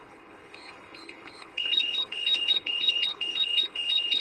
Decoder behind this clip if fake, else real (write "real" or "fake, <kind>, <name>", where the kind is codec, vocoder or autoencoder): fake, codec, HILCodec